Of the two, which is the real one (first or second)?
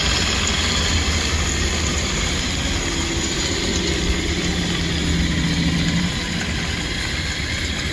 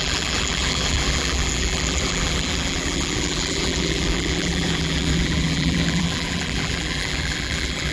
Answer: first